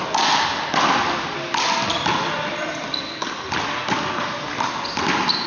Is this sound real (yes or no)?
yes